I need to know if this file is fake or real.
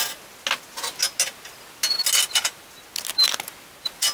real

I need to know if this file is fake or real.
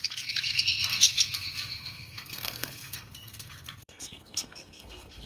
fake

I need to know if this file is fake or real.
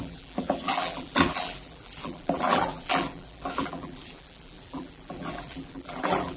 fake